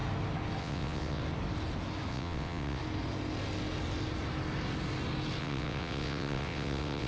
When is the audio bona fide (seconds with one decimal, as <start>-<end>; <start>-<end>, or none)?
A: 0.0-0.6; 1.2-2.1; 2.8-5.4